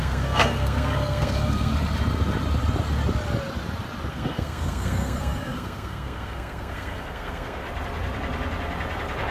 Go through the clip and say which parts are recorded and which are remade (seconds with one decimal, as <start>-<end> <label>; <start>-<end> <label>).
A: 0.0-1.7 remade; 1.7-4.1 recorded; 4.1-7.6 remade; 7.6-9.3 recorded